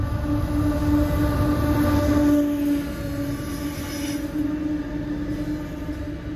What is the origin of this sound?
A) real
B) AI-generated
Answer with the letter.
A